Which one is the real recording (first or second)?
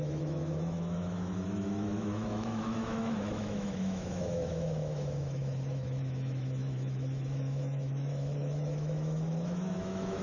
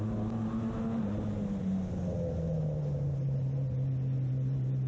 second